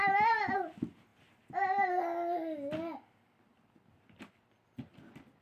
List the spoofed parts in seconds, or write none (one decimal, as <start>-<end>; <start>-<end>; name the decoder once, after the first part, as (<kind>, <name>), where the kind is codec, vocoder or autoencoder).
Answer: none